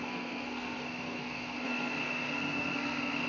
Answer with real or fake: fake